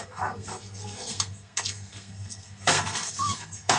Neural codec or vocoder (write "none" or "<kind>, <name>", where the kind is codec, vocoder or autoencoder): codec, SNAC